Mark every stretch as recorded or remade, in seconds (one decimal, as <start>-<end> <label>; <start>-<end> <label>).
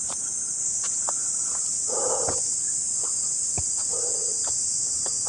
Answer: 0.0-1.2 recorded; 1.2-3.0 remade; 3.0-5.3 recorded